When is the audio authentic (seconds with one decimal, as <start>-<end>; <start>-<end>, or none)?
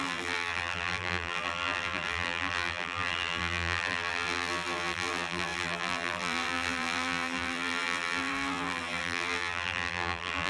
none